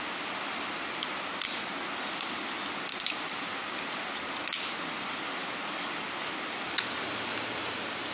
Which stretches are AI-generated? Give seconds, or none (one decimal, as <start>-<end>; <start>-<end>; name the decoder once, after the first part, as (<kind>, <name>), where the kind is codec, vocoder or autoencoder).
none